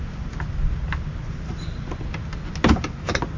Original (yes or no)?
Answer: yes